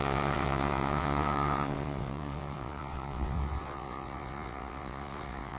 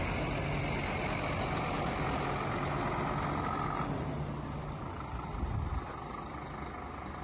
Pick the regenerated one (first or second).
first